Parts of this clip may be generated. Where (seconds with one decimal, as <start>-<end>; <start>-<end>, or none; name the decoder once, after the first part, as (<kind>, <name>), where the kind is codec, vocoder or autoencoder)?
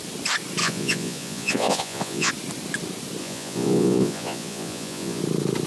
0.6-2.3 (vocoder, Vocos); 3.2-5.2